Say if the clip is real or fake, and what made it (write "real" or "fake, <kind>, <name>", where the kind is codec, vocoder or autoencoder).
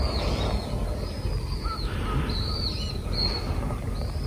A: real